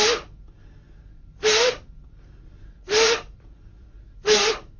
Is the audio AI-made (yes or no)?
no